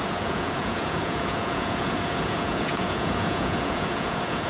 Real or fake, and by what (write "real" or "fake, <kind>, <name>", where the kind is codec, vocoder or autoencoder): fake, vocoder, Vocos